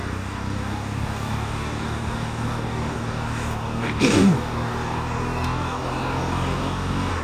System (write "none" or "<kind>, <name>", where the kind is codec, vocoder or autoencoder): codec, DAC